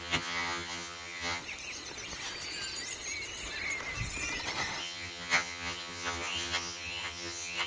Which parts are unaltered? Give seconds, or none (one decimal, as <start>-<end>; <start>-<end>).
1.4-4.8